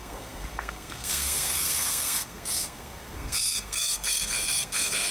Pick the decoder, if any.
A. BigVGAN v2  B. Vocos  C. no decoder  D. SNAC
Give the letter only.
D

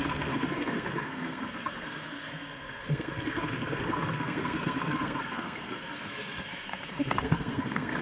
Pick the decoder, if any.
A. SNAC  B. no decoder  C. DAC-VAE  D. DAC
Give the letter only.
A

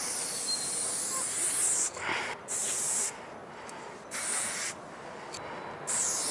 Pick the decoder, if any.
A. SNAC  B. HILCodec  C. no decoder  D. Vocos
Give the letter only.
C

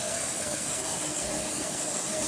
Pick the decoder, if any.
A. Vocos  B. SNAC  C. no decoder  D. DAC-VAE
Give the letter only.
B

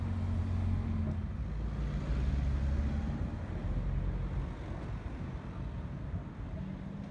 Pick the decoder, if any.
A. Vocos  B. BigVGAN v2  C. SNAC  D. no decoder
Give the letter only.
D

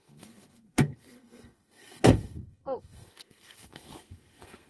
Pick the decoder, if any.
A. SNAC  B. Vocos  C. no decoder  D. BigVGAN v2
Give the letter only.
A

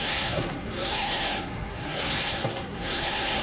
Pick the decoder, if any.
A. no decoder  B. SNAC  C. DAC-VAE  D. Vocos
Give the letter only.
B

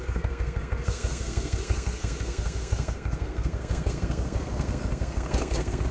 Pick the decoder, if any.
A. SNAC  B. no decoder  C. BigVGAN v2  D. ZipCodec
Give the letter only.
A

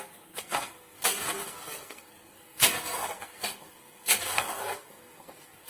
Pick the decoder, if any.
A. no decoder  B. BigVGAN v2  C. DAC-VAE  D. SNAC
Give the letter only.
D